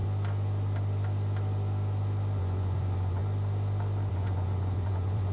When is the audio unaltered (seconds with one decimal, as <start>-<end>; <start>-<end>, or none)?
0.0-2.4; 3.2-4.1